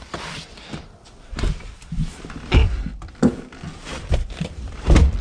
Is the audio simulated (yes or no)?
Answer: yes